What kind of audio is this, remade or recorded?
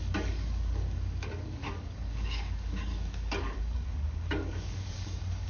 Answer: remade